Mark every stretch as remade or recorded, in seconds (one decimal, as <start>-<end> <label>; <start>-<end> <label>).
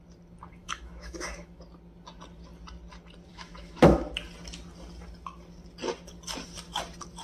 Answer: 0.0-0.6 recorded; 0.6-1.6 remade; 1.6-3.3 recorded; 3.3-4.1 remade; 4.1-7.2 recorded